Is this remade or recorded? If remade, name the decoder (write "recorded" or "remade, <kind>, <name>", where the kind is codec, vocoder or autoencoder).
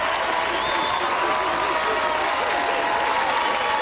recorded